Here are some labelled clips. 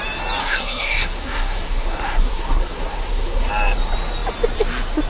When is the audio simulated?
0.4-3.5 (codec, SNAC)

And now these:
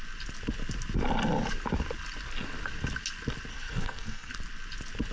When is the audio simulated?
3.5-4.3 (codec, SNAC)

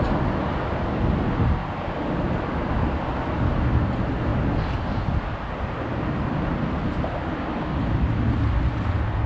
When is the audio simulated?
none